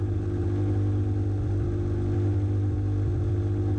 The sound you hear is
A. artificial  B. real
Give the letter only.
B